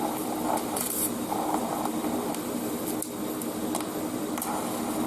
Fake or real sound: real